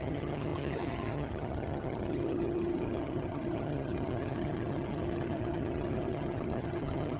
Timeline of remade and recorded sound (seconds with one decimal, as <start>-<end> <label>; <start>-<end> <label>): 0.0-7.2 remade